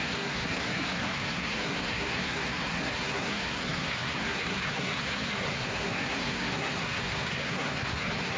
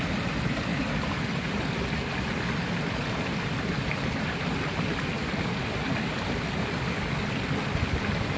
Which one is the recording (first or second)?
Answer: second